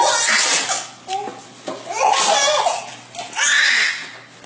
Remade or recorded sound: recorded